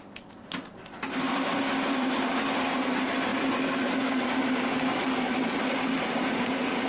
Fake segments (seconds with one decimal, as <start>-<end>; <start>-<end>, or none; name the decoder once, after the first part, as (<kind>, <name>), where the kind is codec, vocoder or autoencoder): none